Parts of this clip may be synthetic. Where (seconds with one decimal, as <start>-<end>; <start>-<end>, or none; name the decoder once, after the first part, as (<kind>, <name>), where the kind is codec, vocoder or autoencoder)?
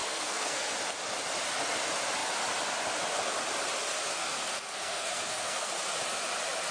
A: 0.0-0.7 (codec, SNAC); 4.1-5.7